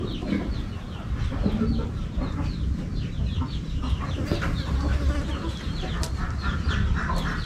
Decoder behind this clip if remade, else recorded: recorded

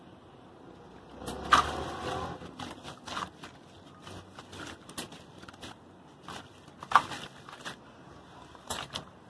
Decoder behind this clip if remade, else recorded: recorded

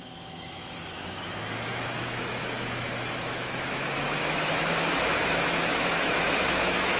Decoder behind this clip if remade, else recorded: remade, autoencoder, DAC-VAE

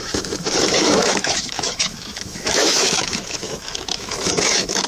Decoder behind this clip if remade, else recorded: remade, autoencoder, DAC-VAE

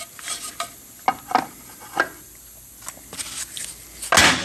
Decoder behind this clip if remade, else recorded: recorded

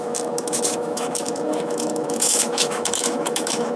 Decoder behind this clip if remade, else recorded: remade, autoencoder, DAC-VAE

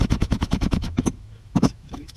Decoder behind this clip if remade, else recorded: remade, autoencoder, DAC-VAE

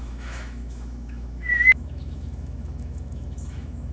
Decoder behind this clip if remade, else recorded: remade, autoencoder, DAC-VAE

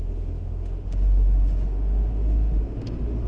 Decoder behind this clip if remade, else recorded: remade, autoencoder, DAC-VAE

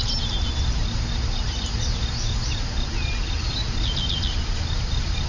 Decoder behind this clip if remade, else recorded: recorded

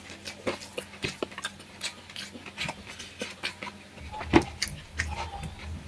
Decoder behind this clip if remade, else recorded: recorded